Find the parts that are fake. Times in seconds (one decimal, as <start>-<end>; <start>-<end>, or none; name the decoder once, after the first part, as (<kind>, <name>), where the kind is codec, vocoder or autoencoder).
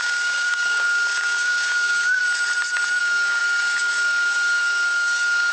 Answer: 0.0-2.2 (codec, DAC); 3.0-5.5